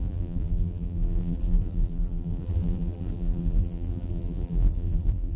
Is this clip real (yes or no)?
no